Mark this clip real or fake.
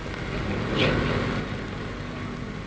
real